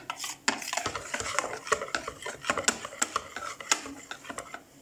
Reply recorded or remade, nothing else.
recorded